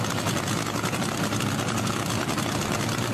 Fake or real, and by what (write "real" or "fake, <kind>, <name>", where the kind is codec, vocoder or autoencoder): real